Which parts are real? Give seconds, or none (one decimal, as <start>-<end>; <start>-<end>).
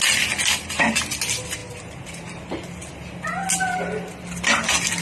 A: 0.0-5.0